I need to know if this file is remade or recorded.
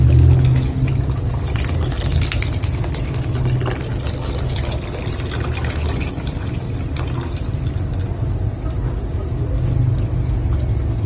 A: recorded